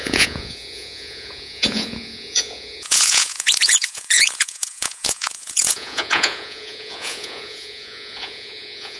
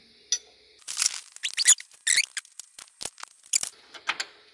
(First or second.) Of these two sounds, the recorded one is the second